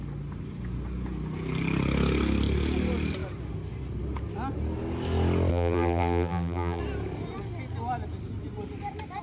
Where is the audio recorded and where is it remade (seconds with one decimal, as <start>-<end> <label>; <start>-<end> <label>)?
0.0-5.5 recorded; 5.5-6.8 remade; 6.8-9.2 recorded